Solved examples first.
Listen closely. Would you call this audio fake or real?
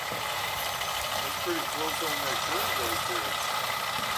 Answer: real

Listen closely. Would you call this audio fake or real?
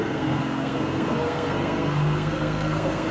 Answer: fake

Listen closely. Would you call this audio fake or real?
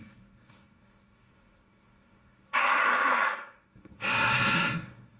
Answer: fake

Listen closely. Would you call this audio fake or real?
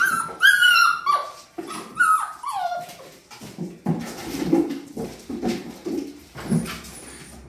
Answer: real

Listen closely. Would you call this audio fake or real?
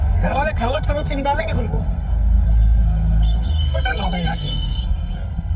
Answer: fake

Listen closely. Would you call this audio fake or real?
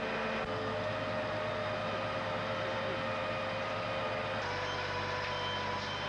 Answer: real